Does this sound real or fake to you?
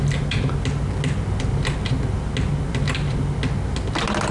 real